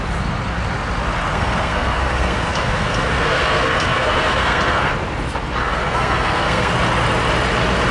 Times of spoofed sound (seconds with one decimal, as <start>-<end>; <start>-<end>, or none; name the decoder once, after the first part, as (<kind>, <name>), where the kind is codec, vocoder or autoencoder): 1.3-4.9 (codec, SNAC); 5.6-6.7